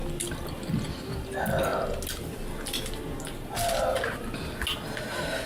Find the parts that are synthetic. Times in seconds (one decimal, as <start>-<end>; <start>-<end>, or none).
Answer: 0.5-1.7; 5.0-5.5